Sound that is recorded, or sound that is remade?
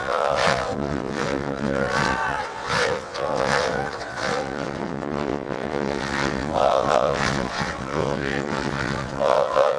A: remade